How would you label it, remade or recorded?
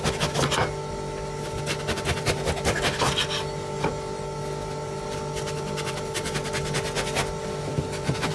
recorded